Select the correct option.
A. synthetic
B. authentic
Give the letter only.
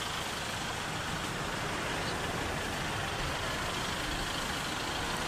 B